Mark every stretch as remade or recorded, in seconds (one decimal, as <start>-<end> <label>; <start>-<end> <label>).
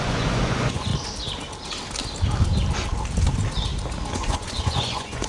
0.0-0.9 remade; 0.9-4.1 recorded; 4.1-5.3 remade